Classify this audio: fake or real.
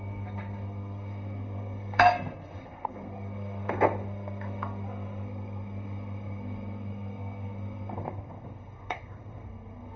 fake